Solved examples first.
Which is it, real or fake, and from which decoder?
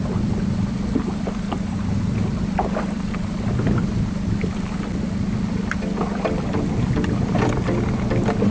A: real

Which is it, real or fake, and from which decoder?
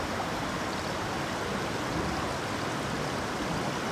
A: real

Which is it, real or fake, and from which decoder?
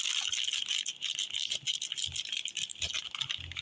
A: real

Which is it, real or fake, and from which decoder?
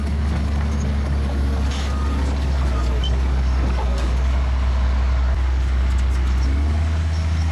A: fake, codec, DAC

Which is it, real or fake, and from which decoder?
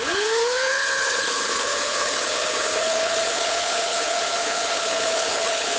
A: fake, codec, HILCodec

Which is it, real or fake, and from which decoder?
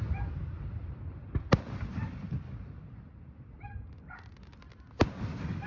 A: real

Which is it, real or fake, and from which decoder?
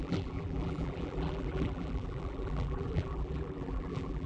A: fake, vocoder, BigVGAN v2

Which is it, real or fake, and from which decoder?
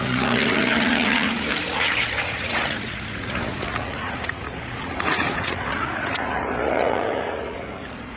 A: fake, vocoder, Vocos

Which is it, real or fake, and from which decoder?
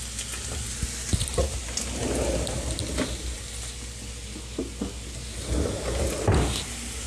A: real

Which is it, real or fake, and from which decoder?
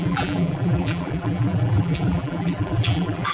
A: fake, vocoder, BigVGAN v2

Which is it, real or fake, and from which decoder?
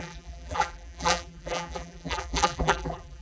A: fake, vocoder, BigVGAN v2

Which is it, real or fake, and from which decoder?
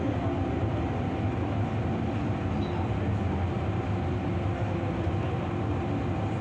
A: real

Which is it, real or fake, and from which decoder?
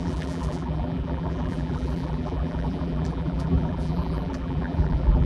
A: fake, vocoder, BigVGAN v2